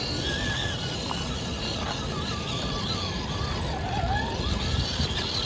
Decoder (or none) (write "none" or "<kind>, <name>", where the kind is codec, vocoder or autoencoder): none